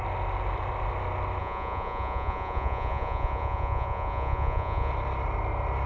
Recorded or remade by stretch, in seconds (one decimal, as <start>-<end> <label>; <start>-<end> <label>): 0.0-1.4 recorded; 1.4-4.9 remade; 4.9-5.9 recorded